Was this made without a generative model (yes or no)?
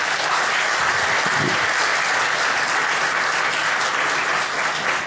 yes